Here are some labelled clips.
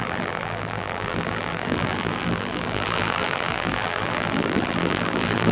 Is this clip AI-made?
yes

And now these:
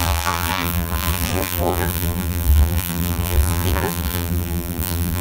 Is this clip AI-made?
yes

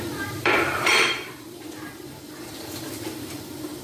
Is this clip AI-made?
yes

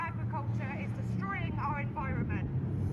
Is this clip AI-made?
no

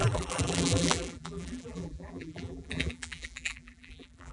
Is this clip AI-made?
yes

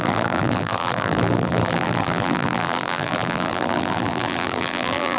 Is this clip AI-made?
yes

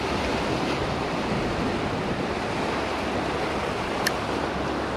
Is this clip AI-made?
no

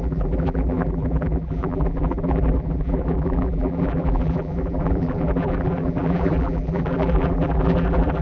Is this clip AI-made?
yes